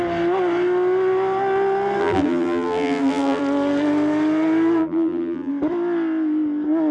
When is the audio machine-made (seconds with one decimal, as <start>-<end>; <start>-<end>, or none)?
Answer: 2.0-3.4; 4.8-5.5